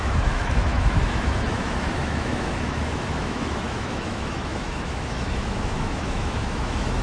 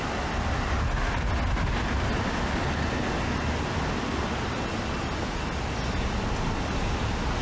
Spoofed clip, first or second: first